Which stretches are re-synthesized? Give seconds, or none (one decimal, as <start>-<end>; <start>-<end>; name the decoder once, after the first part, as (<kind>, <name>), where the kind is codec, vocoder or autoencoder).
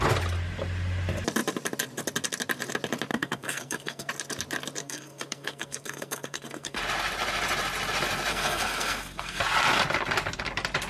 3.1-4.1 (codec, SNAC); 4.8-6.8; 8.3-9.4